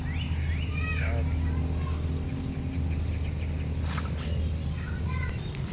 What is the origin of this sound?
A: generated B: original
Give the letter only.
B